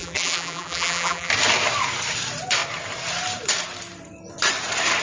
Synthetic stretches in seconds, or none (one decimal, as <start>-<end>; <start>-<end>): 0.0-1.3